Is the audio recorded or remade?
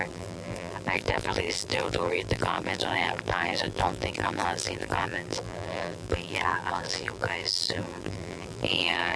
remade